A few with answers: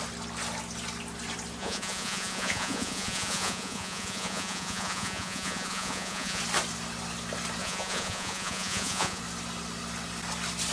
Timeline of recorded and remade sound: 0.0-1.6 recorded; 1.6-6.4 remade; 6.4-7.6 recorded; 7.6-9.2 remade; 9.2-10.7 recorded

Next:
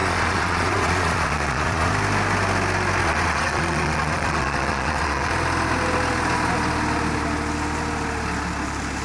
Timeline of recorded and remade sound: 0.0-1.9 remade; 1.9-3.0 recorded; 3.0-5.3 remade; 5.3-9.0 recorded

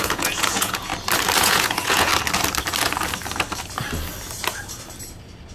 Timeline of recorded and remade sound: 0.0-0.9 remade; 0.9-1.4 recorded; 1.4-2.1 remade; 2.1-5.5 recorded

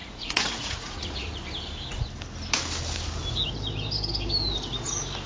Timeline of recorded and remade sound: 0.0-1.4 remade; 1.4-5.3 recorded

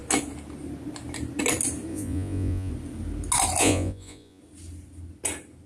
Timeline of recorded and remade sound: 0.0-1.9 recorded; 1.9-2.7 remade; 2.7-3.6 recorded; 3.6-4.4 remade; 4.4-5.7 recorded

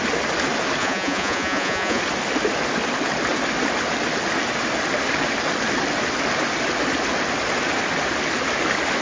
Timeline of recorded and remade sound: 0.0-0.8 recorded; 0.8-2.0 remade; 2.0-9.0 recorded

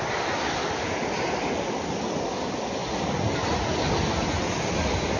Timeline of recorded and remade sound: 0.0-5.2 recorded

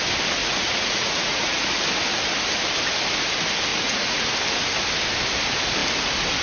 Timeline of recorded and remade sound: 0.0-0.4 recorded; 0.4-1.8 remade; 1.8-3.7 recorded; 3.7-4.3 remade; 4.3-6.4 recorded